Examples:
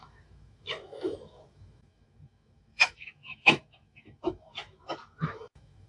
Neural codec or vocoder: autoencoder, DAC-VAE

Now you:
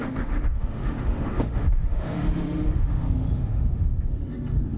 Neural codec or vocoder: autoencoder, DAC-VAE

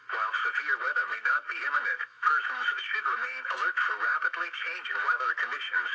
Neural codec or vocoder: autoencoder, DAC-VAE